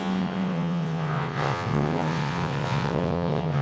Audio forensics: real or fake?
fake